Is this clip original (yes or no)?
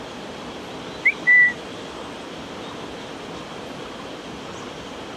yes